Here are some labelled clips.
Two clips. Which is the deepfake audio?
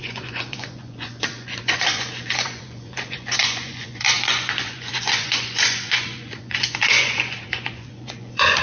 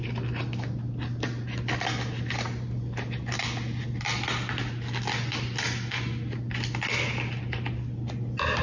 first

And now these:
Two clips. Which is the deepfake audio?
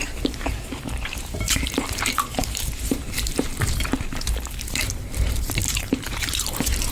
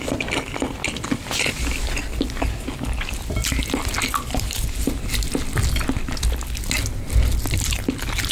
first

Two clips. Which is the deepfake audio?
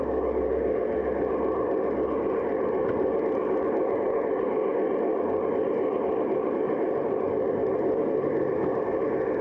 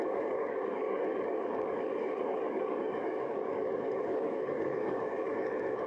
second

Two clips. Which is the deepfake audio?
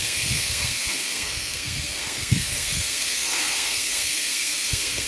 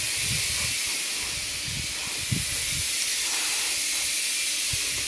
first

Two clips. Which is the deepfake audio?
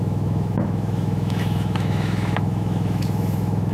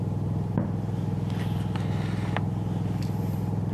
first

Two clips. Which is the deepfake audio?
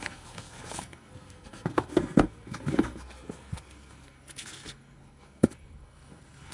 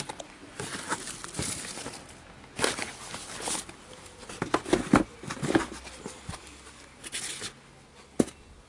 first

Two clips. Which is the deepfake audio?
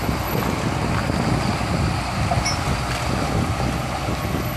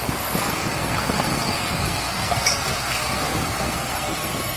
second